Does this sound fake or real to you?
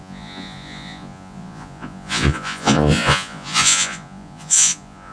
fake